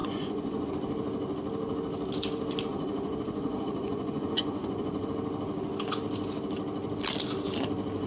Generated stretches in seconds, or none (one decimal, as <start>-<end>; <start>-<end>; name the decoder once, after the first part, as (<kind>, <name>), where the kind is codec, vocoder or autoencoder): 0.0-0.7 (vocoder, Vocos); 2.7-5.1